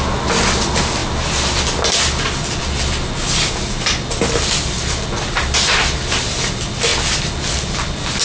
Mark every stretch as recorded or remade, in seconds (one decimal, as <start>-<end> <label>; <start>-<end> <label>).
0.0-8.2 recorded